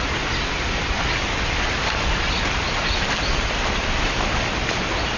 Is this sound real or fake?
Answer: real